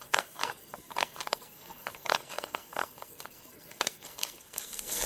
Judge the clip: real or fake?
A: fake